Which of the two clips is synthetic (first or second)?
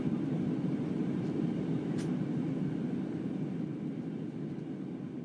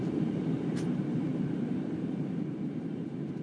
second